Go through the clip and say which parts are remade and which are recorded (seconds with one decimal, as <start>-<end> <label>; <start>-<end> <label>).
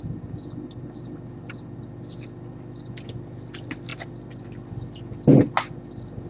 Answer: 0.0-6.3 recorded